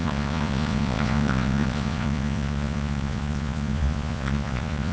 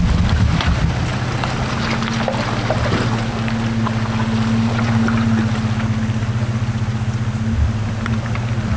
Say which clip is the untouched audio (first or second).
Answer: second